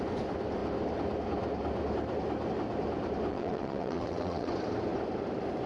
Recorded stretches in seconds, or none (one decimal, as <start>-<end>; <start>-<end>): 0.0-3.3; 4.5-5.7